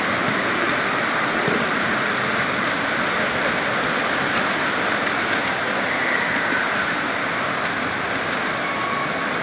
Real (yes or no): yes